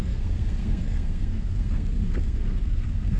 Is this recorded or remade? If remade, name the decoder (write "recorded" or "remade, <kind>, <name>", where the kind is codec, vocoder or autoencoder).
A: remade, codec, SNAC